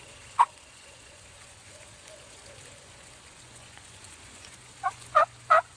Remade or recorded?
remade